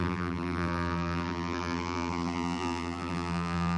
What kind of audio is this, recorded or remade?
remade